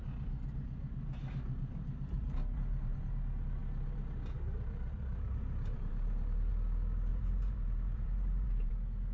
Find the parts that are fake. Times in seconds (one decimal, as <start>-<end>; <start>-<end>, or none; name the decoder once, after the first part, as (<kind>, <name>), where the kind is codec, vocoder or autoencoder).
1.2-3.1 (vocoder, BigVGAN v2); 3.6-6.5; 7.1-8.7